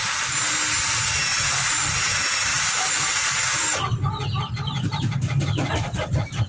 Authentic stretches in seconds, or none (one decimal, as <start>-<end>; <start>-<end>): 0.0-1.3; 1.9-2.5